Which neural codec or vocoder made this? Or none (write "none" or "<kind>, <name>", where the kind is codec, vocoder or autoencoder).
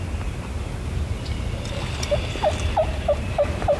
none